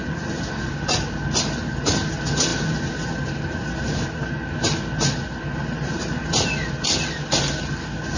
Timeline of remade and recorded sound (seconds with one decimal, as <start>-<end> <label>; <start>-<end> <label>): 0.0-8.2 recorded